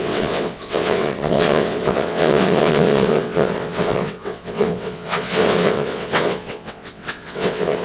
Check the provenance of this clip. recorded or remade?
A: remade